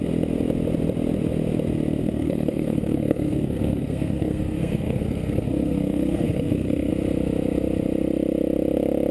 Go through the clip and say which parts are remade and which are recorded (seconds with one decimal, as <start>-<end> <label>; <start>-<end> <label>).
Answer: 0.0-2.0 recorded; 2.0-6.9 remade; 6.9-9.1 recorded

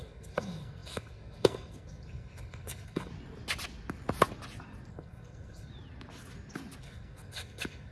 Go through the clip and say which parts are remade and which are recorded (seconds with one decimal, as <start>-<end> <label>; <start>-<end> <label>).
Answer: 0.0-3.1 remade; 3.1-4.9 recorded; 4.9-5.7 remade; 5.7-6.8 recorded; 6.8-7.9 remade

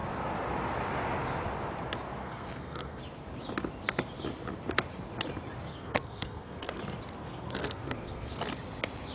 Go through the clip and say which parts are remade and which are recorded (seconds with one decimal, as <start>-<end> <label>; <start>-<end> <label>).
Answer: 0.0-2.2 recorded; 2.2-3.0 remade; 3.0-5.7 recorded; 5.7-6.8 remade; 6.8-7.2 recorded; 7.2-8.4 remade; 8.4-9.1 recorded

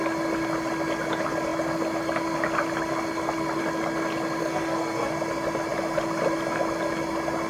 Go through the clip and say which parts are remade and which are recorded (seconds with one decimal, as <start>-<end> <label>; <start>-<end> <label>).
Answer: 0.0-4.4 recorded; 4.4-5.1 remade; 5.1-7.5 recorded